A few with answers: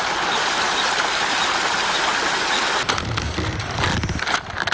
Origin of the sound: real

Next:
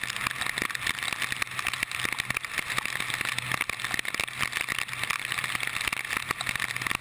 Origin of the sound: real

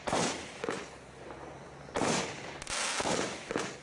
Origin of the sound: real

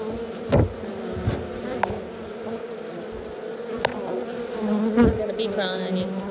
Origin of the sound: real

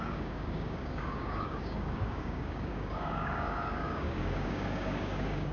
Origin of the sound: fake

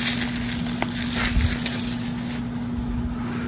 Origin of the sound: real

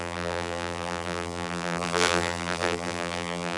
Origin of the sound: fake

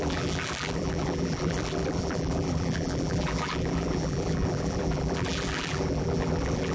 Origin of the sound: fake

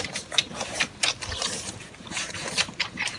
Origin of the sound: fake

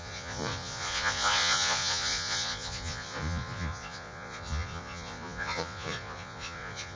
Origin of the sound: fake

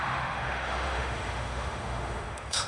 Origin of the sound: fake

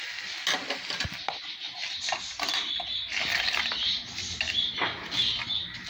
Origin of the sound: real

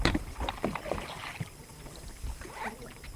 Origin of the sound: real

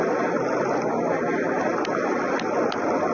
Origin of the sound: real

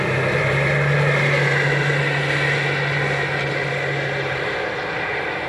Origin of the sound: real